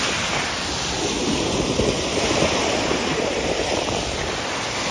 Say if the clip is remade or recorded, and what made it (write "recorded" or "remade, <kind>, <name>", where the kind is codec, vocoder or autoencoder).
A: recorded